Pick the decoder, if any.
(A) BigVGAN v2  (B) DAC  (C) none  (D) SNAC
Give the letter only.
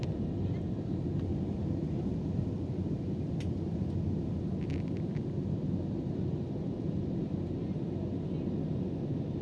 C